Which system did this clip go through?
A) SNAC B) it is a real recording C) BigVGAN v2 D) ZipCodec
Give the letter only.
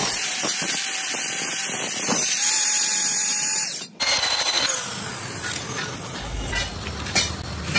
B